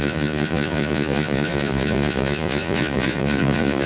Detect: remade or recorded remade